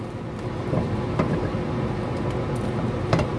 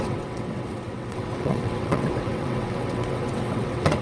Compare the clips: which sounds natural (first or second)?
first